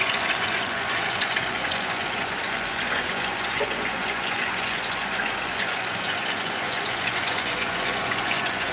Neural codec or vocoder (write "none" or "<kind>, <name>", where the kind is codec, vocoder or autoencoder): vocoder, Vocos